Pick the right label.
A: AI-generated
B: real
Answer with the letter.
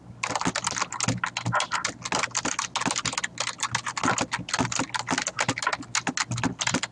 B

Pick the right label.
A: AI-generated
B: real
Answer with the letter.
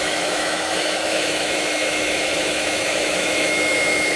A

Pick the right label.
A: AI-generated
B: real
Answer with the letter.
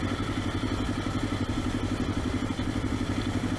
B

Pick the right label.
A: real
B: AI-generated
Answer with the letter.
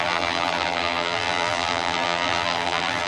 B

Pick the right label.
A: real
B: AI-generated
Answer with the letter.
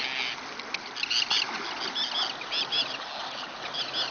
A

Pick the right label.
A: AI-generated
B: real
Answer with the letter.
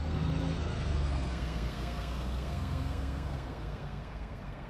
A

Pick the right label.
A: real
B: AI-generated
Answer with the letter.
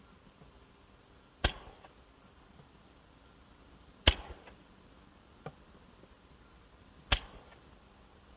A